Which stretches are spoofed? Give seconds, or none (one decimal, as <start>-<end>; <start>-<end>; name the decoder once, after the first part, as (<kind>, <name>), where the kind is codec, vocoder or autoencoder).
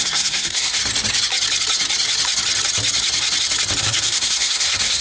0.0-0.8 (codec, SNAC); 3.8-5.0